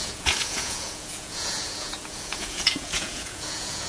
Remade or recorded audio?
remade